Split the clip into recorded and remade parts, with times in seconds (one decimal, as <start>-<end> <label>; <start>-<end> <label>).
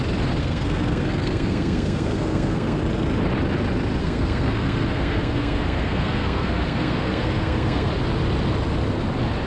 0.0-0.4 recorded; 0.4-2.8 remade; 2.8-4.0 recorded; 4.0-7.9 remade; 7.9-9.5 recorded